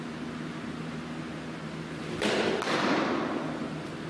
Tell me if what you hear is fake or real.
real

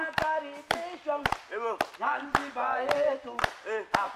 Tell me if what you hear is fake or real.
real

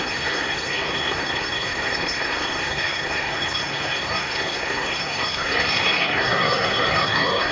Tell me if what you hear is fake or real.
fake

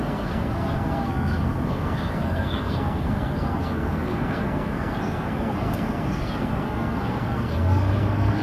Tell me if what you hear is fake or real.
fake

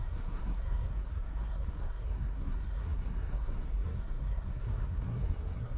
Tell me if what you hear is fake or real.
fake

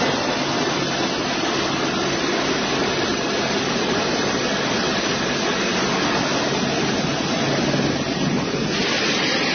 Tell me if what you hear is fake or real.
real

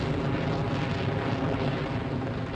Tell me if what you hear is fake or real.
real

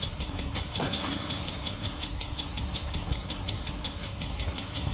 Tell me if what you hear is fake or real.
fake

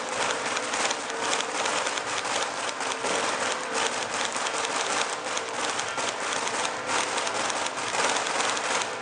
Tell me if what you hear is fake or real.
real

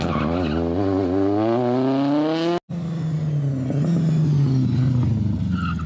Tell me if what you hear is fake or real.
real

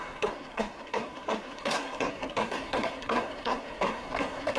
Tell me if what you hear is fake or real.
fake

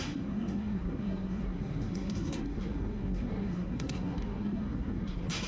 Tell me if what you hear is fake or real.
fake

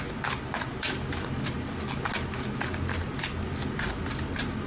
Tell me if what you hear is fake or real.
real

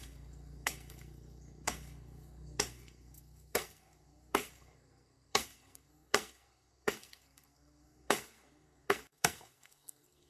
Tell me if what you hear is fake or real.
fake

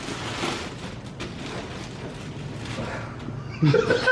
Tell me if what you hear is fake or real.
real